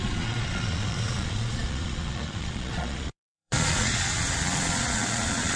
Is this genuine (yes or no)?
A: no